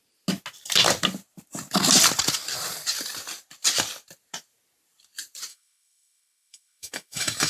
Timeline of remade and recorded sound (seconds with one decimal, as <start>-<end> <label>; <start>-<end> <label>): 0.0-5.5 recorded; 5.5-7.5 remade